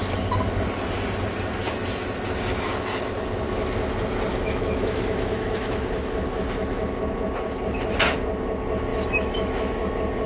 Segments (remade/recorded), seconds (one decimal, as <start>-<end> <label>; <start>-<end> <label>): 0.0-4.3 recorded; 4.3-7.0 remade; 7.0-8.9 recorded; 8.9-9.9 remade; 9.9-10.3 recorded